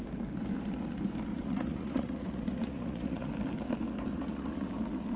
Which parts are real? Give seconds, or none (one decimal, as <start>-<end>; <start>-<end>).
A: 0.0-1.3; 3.3-4.1; 4.7-5.2